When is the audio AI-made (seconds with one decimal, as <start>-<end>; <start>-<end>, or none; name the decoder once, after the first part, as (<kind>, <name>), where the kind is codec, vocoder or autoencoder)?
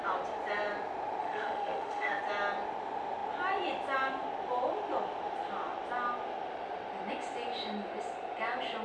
1.2-2.2 (autoencoder, DAC-VAE)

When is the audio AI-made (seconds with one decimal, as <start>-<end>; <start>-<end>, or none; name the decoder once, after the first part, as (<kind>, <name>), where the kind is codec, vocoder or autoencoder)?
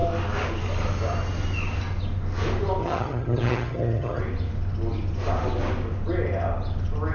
2.8-4.2 (vocoder, HiFi-GAN)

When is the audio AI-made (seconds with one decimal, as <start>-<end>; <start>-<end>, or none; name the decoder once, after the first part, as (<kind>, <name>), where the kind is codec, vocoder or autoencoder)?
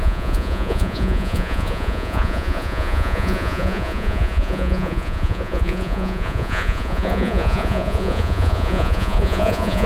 0.0-9.9 (vocoder, Vocos)